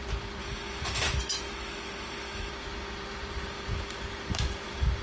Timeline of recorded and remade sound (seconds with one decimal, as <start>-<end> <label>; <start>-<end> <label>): 0.0-0.4 recorded; 0.4-2.5 remade; 2.5-5.0 recorded